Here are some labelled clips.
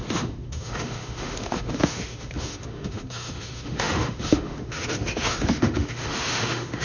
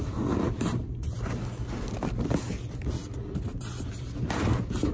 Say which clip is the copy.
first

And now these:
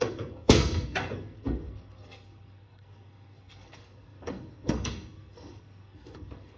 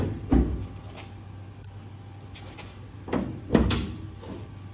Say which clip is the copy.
first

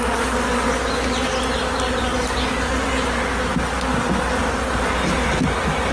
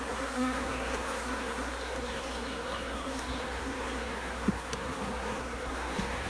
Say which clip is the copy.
second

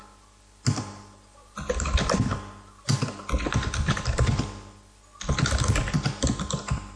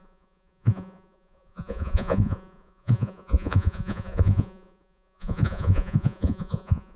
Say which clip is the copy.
second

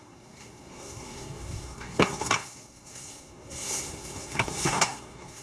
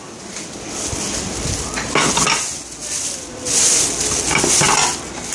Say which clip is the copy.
first